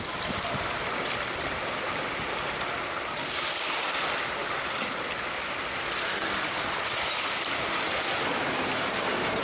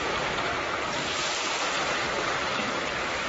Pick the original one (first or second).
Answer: first